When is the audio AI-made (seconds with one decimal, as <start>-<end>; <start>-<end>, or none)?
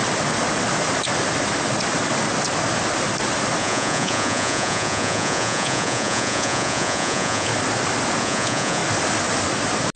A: 3.6-7.5; 8.2-8.8